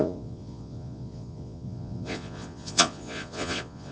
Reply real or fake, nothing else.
fake